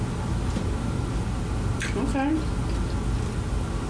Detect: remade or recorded recorded